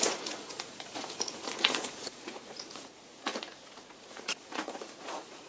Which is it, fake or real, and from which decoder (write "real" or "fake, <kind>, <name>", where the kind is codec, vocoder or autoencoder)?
fake, vocoder, Vocos